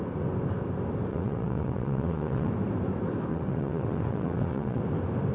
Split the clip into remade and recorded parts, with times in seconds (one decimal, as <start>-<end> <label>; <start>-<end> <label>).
0.0-1.1 recorded; 1.1-2.5 remade; 2.5-3.3 recorded; 3.3-4.8 remade; 4.8-5.3 recorded

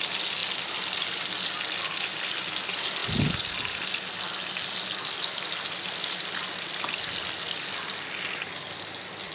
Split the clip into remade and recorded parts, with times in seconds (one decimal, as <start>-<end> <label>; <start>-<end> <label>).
0.0-9.3 recorded

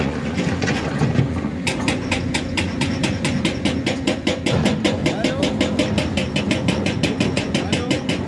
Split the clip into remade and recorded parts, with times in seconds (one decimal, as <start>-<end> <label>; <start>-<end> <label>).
0.0-5.0 remade; 5.0-6.4 recorded; 6.4-8.3 remade

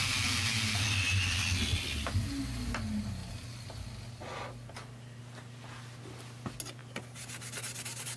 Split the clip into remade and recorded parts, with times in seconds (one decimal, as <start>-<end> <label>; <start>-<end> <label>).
0.0-8.2 recorded

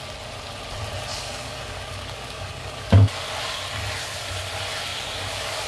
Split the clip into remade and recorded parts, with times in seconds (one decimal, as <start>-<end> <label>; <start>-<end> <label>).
0.0-1.1 recorded; 1.1-3.3 remade; 3.3-4.9 recorded; 4.9-5.7 remade

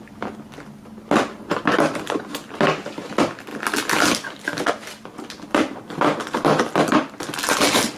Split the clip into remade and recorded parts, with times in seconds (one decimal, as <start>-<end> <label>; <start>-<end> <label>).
0.0-8.0 recorded

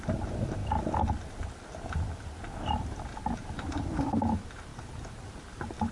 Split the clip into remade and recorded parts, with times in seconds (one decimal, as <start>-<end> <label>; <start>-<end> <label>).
0.0-5.9 recorded

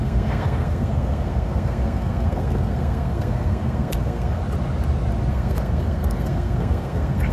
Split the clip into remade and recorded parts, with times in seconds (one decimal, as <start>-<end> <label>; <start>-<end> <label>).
0.0-4.4 remade; 4.4-5.3 recorded; 5.3-7.3 remade